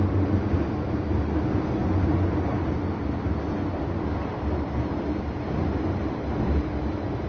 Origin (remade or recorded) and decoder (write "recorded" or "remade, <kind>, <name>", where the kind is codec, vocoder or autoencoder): recorded